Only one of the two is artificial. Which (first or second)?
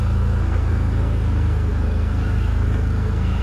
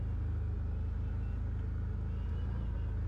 first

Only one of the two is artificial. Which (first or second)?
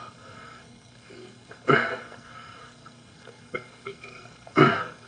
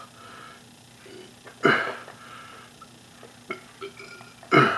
first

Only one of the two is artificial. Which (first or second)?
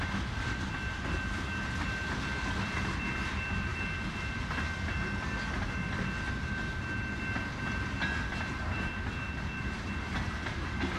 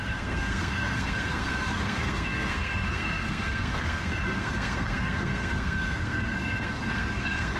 second